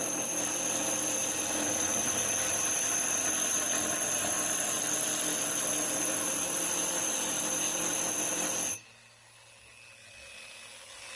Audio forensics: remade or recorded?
recorded